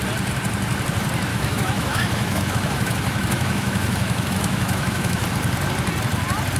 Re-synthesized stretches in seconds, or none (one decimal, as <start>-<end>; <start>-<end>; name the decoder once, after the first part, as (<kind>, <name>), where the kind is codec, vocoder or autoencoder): 1.3-5.3 (autoencoder, DAC-VAE)